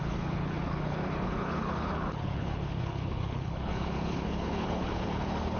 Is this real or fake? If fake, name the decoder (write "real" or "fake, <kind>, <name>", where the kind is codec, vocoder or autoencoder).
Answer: fake, codec, HILCodec